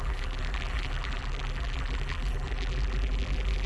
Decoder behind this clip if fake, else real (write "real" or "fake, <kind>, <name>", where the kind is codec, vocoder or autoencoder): fake, vocoder, BigVGAN v2